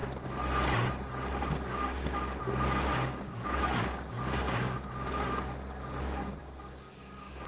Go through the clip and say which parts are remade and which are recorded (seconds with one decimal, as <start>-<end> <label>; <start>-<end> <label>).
0.0-2.9 recorded; 2.9-4.9 remade; 4.9-6.4 recorded; 6.4-7.5 remade